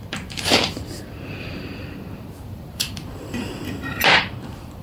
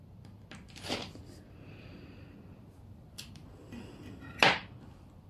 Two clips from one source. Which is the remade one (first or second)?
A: first